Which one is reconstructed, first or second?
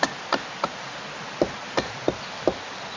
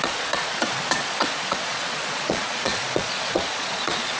second